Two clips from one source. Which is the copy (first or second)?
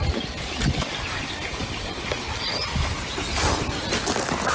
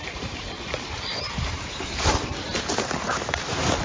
second